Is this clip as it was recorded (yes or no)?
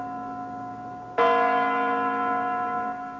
yes